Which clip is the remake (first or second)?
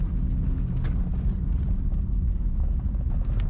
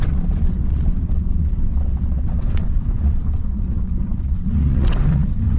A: second